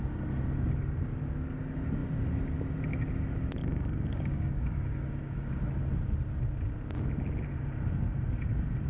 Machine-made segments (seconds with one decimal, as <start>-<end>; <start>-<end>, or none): 3.6-5.6